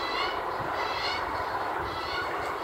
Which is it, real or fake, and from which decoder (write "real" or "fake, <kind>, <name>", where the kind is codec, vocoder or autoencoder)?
real